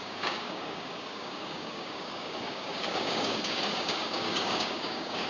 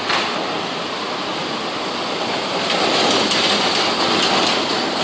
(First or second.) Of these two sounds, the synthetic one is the first